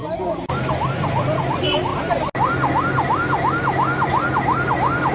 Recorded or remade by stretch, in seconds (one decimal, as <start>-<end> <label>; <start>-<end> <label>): 0.0-5.1 recorded